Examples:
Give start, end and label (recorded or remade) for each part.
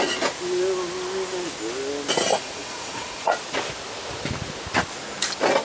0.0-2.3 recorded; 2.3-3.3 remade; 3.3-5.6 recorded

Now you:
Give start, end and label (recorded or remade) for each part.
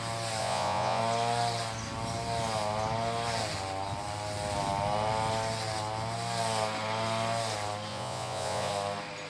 0.0-0.4 recorded; 0.4-1.0 remade; 1.0-7.9 recorded; 7.9-8.7 remade; 8.7-9.3 recorded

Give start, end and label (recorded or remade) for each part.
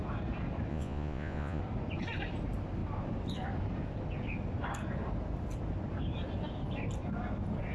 0.0-0.7 recorded; 0.7-1.6 remade; 1.6-7.7 recorded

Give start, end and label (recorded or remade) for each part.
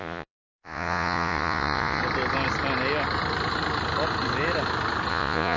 0.0-2.0 remade; 2.0-5.1 recorded; 5.1-5.6 remade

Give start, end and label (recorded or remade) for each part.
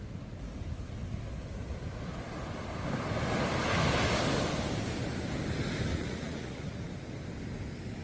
0.0-5.9 recorded; 5.9-6.9 remade; 6.9-8.0 recorded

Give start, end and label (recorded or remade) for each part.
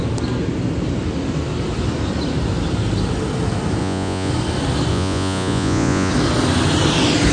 0.0-3.8 recorded; 3.8-4.3 remade; 4.3-4.9 recorded; 4.9-6.1 remade; 6.1-7.3 recorded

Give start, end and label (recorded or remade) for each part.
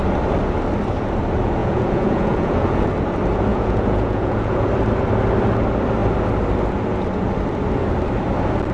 0.0-1.6 recorded; 1.6-2.9 remade; 2.9-3.5 recorded; 3.5-4.7 remade; 4.7-8.7 recorded